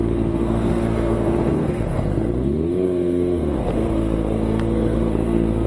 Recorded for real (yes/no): no